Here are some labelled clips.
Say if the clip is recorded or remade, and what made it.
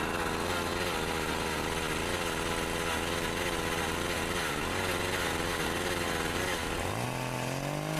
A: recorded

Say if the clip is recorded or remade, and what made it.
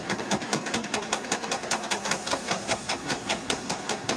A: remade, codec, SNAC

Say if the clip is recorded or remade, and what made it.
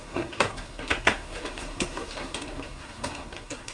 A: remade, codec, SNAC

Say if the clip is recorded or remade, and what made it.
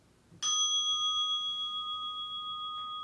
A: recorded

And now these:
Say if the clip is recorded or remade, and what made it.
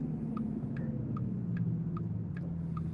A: recorded